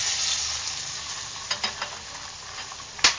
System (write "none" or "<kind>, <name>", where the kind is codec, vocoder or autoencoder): none